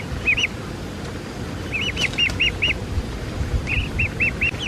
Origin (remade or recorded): recorded